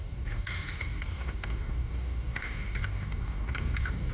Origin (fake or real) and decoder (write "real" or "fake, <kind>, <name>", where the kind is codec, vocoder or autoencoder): fake, codec, DAC